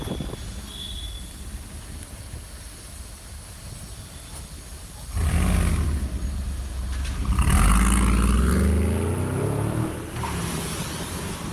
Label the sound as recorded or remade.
recorded